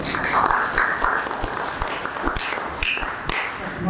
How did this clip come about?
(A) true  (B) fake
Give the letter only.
A